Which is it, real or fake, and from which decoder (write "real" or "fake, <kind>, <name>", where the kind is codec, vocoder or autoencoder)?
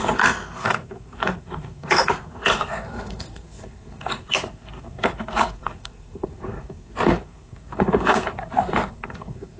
fake, codec, SNAC